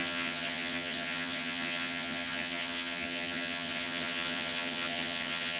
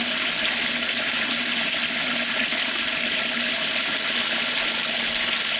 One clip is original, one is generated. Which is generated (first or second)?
first